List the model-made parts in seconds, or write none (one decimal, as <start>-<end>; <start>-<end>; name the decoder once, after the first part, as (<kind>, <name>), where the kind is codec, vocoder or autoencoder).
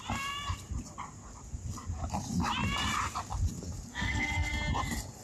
3.9-4.5 (codec, SNAC)